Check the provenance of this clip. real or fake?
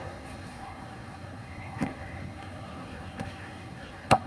fake